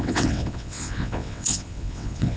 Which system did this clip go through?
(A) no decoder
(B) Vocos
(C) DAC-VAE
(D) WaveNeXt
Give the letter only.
D